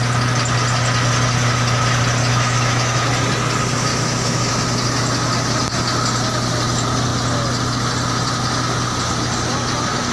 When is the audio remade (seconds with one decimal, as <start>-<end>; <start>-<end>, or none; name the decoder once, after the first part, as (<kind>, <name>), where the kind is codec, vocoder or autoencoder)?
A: 2.2-3.1 (autoencoder, DAC-VAE); 3.9-4.5